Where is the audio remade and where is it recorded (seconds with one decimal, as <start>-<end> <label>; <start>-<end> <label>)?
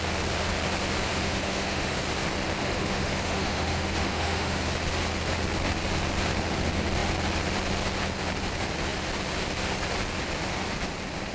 0.0-1.1 recorded; 1.1-2.0 remade; 2.0-2.6 recorded; 2.6-4.6 remade; 4.6-11.3 recorded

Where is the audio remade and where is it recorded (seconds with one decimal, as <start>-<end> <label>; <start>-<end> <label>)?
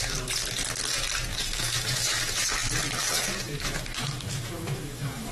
0.0-1.3 recorded; 1.3-2.4 remade; 2.4-3.0 recorded; 3.0-5.3 remade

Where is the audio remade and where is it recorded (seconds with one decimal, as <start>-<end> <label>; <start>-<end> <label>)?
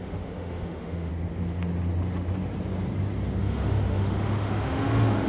0.0-1.1 remade; 1.1-3.4 recorded; 3.4-5.3 remade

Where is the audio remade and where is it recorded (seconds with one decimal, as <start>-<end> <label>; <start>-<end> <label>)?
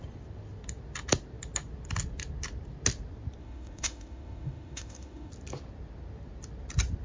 0.0-3.4 recorded; 3.4-5.3 remade; 5.3-7.0 recorded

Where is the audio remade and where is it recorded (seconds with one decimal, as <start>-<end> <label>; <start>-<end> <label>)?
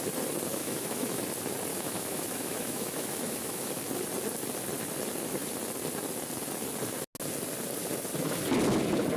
0.0-0.5 recorded; 0.5-1.2 remade; 1.2-1.7 recorded; 1.7-3.7 remade; 3.7-9.2 recorded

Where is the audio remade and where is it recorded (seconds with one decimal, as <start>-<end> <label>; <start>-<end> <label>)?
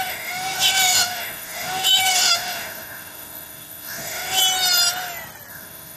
0.0-4.4 remade; 4.4-5.5 recorded; 5.5-6.0 remade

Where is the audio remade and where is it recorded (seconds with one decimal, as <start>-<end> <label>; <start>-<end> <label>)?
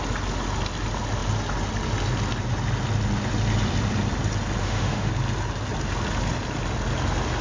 0.0-4.6 recorded; 4.6-5.1 remade; 5.1-7.4 recorded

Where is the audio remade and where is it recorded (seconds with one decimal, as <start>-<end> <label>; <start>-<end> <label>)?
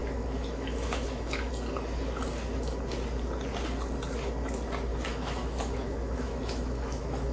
0.0-1.5 remade; 1.5-4.9 recorded; 4.9-7.3 remade